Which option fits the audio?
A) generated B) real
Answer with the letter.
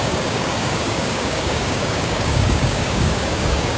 A